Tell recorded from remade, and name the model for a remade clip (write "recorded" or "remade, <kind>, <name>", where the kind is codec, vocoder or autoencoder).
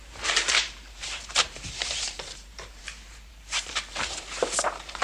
remade, vocoder, BigVGAN v2